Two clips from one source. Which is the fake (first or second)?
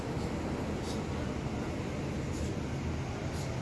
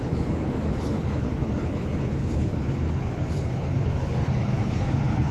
second